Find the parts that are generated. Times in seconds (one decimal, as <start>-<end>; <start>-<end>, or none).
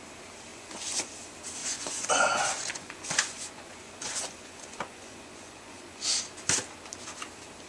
0.5-1.1; 1.6-6.2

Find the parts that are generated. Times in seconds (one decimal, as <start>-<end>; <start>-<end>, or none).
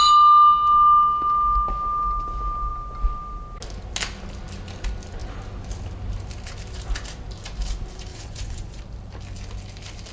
8.1-8.8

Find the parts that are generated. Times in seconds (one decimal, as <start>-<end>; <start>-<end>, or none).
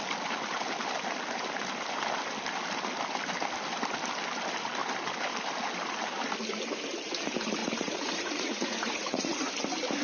7.6-9.5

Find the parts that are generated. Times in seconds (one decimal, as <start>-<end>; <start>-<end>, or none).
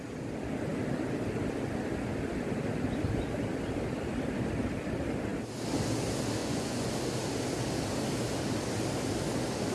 6.4-6.9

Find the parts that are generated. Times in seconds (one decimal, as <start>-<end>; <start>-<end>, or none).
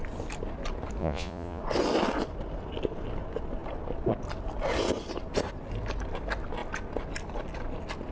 1.0-1.6